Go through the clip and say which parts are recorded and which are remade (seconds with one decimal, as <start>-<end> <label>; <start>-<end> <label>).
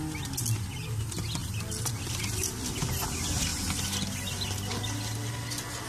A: 0.0-1.4 recorded; 1.4-1.9 remade; 1.9-3.5 recorded; 3.5-5.3 remade; 5.3-5.9 recorded